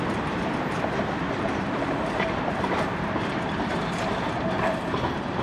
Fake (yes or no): yes